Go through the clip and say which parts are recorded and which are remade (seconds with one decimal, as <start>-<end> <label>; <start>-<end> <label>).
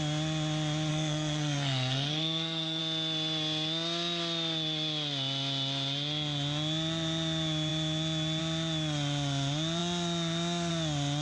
0.0-0.9 recorded; 0.9-2.8 remade; 2.8-11.2 recorded